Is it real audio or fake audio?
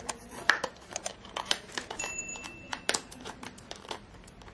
fake